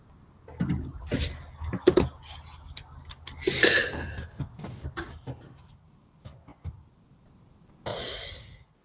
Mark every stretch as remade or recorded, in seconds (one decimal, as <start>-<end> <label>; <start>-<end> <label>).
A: 0.0-7.9 recorded; 7.9-8.8 remade